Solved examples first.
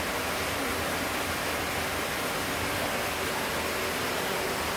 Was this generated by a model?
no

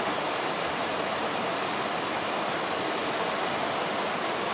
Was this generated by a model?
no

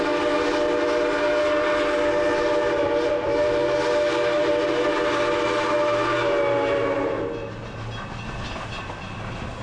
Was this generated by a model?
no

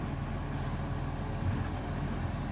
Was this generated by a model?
no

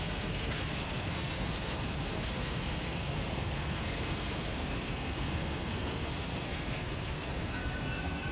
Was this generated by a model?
yes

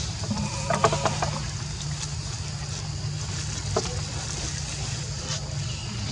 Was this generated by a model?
no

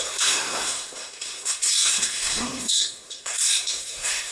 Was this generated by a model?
yes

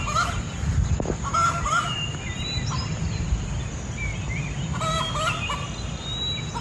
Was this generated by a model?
no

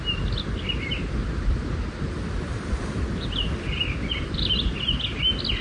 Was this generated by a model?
no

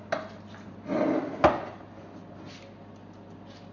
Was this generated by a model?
no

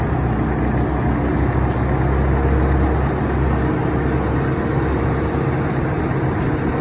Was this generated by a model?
no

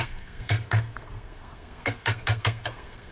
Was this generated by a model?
yes